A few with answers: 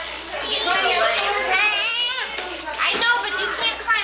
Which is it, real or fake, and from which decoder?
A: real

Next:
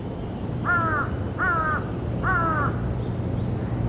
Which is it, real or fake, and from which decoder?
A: real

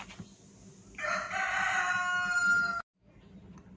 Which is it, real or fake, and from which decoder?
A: real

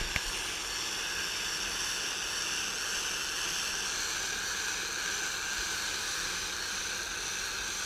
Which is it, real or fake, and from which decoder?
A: real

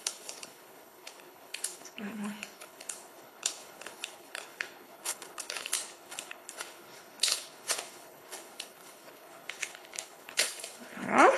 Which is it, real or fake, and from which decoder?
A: fake, codec, HILCodec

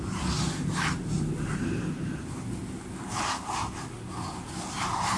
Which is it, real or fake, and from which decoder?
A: real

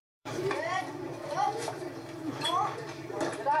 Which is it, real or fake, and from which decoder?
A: fake, vocoder, BigVGAN v2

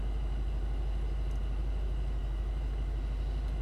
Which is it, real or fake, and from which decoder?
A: real